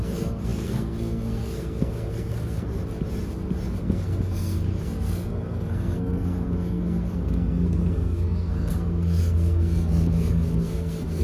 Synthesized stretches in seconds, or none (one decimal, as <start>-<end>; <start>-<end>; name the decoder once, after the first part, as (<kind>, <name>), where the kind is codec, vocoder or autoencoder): 0.0-2.8 (codec, SNAC); 3.8-11.2